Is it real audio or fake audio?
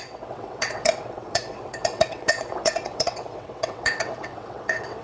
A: fake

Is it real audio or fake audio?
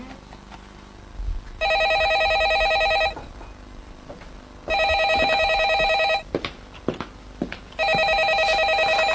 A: real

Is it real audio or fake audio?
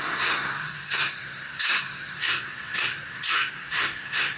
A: fake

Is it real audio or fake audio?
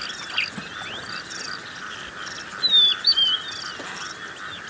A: real